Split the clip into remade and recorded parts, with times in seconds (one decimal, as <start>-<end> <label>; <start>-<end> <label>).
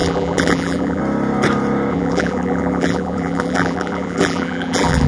0.0-1.0 remade; 1.0-1.9 recorded; 1.9-5.1 remade